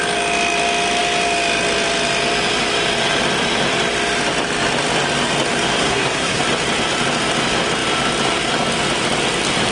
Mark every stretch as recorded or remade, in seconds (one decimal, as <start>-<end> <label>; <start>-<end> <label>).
0.0-5.8 recorded; 5.8-6.4 remade; 6.4-9.7 recorded